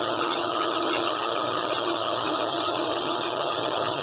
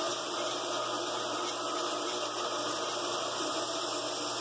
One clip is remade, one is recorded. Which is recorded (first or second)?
second